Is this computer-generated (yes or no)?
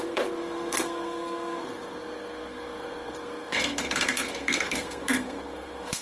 yes